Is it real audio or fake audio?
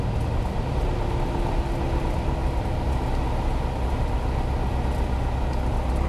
real